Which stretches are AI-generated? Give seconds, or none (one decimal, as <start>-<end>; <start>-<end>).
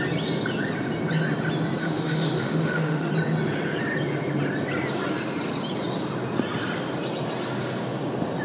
1.8-3.1